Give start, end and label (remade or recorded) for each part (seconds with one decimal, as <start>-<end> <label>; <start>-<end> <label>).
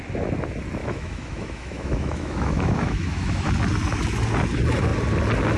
0.0-0.8 recorded; 0.8-3.5 remade; 3.5-5.6 recorded